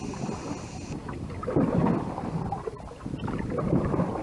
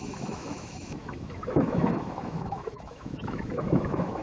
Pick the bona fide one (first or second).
first